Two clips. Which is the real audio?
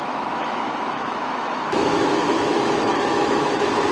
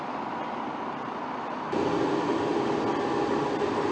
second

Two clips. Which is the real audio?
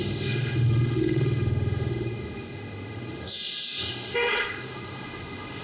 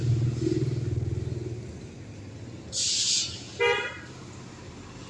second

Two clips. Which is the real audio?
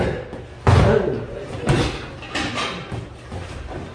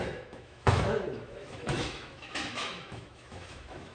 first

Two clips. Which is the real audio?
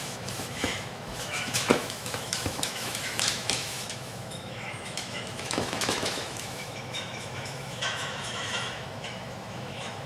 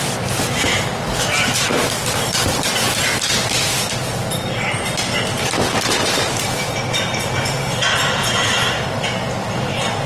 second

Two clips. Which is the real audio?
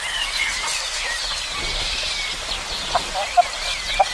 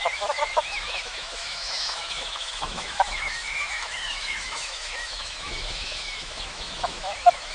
first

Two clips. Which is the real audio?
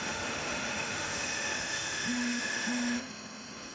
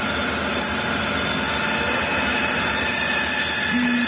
second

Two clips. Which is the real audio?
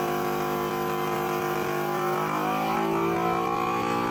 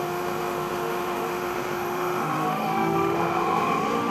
first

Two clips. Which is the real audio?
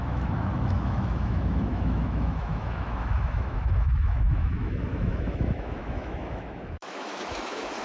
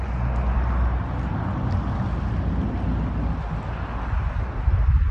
second